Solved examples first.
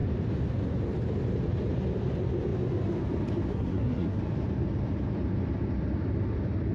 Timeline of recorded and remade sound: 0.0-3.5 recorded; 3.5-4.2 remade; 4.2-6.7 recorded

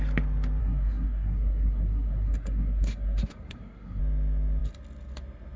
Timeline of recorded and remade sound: 0.0-0.6 recorded; 0.6-4.0 remade; 4.0-5.6 recorded